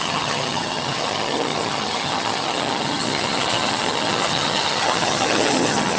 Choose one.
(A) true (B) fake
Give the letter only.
B